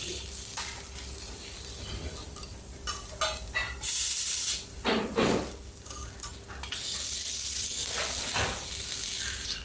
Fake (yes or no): no